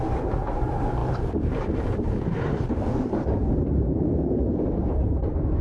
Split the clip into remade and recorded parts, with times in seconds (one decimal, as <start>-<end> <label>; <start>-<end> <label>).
0.0-5.6 remade